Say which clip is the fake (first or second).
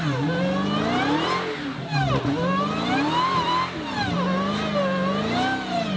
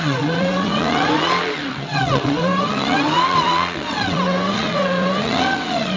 second